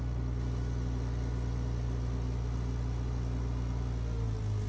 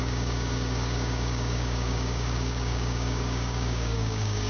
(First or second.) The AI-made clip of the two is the second